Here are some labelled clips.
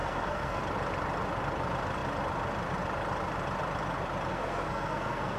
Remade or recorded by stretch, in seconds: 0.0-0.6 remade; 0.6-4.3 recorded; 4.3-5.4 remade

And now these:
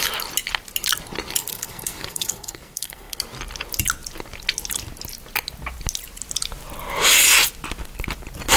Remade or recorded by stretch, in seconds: 0.0-1.4 recorded; 1.4-3.2 remade; 3.2-8.6 recorded

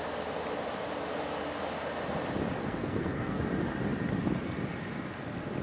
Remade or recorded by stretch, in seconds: 0.0-2.6 recorded; 2.6-3.4 remade; 3.4-5.6 recorded

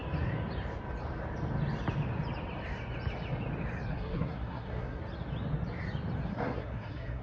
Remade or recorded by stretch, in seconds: 0.0-3.9 recorded; 3.9-5.0 remade; 5.0-6.3 recorded; 6.3-7.2 remade

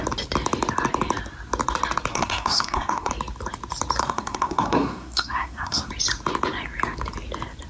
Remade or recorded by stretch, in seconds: 0.0-2.1 recorded; 2.1-3.1 remade; 3.1-4.0 recorded; 4.0-5.9 remade; 5.9-7.7 recorded

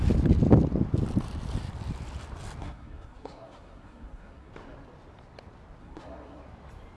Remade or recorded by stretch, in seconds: 0.0-2.6 recorded; 2.6-4.5 remade; 4.5-5.8 recorded; 5.8-6.4 remade; 6.4-7.0 recorded

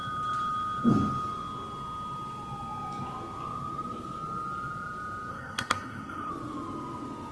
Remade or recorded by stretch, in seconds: 0.0-5.3 recorded; 5.3-6.3 remade; 6.3-7.3 recorded

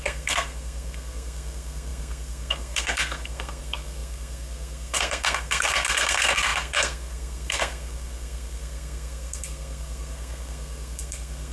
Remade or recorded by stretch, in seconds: 0.0-11.5 remade